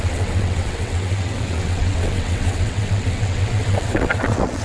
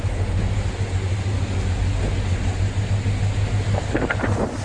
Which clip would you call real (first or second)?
second